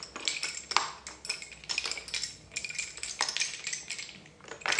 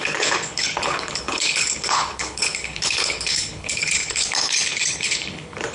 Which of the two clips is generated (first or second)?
second